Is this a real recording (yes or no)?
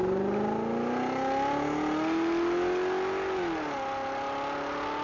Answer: yes